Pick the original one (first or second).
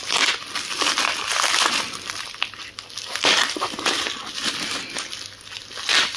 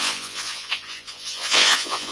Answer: first